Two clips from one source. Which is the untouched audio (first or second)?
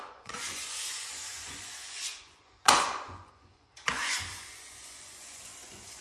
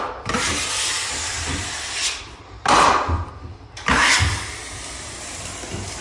second